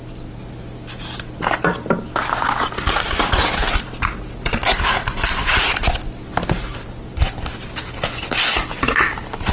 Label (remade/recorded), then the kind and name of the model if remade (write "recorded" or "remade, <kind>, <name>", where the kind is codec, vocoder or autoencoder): recorded